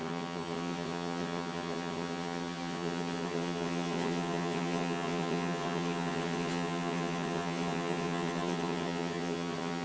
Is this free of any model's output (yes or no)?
no